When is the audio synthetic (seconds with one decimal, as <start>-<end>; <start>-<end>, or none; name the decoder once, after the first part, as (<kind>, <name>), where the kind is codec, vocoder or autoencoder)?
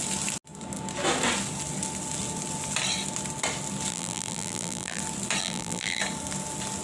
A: 3.9-5.0 (vocoder, BigVGAN v2); 5.4-6.0